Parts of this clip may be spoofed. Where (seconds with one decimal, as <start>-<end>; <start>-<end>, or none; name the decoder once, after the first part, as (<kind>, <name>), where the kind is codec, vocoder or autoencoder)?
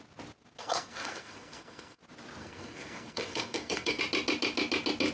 0.6-2.0 (codec, SNAC); 2.4-4.0